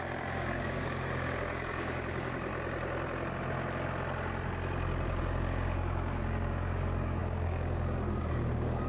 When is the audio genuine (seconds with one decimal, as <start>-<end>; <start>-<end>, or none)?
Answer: 2.5-5.2